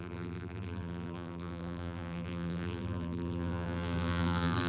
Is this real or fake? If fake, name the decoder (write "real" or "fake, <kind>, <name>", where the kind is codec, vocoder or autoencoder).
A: fake, vocoder, BigVGAN v2